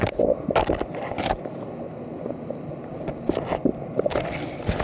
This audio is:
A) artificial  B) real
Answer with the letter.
B